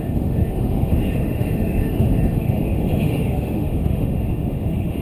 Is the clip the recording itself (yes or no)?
no